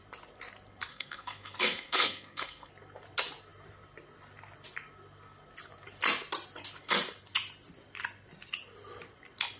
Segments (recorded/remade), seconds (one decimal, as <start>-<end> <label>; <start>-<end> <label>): 0.0-0.9 recorded; 0.9-2.7 remade; 2.7-9.6 recorded

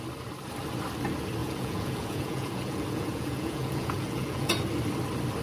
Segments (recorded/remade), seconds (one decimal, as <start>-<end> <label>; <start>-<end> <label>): 0.0-1.4 recorded; 1.4-4.6 remade; 4.6-5.4 recorded

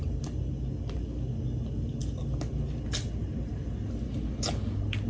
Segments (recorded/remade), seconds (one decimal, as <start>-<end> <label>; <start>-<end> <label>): 0.0-5.1 recorded

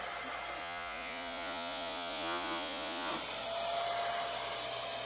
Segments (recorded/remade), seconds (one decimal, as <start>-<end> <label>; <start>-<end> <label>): 0.0-0.6 recorded; 0.6-3.1 remade; 3.1-5.1 recorded

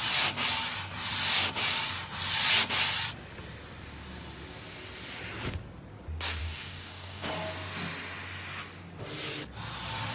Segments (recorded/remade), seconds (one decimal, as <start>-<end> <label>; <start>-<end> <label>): 0.0-6.4 recorded; 6.4-7.3 remade; 7.3-10.1 recorded

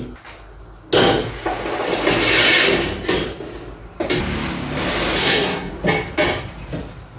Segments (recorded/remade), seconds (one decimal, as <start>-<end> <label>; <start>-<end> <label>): 0.0-5.2 recorded; 5.2-5.7 remade; 5.7-7.2 recorded

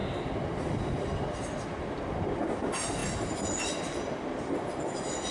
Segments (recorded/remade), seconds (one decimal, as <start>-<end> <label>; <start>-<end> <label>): 0.0-5.3 recorded

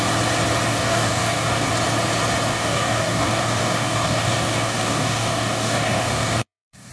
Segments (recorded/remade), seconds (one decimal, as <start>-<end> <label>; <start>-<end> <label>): 0.0-0.7 recorded; 0.7-1.7 remade; 1.7-2.5 recorded; 2.5-6.9 remade